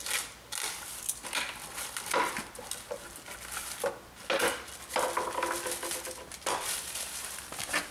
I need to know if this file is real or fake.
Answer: real